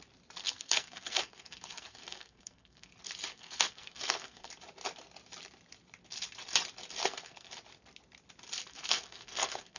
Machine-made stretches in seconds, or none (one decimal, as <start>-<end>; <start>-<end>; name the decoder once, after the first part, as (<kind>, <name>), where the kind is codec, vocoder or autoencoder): 0.4-2.9 (codec, SNAC); 3.3-4.5; 7.0-7.5; 8.7-9.8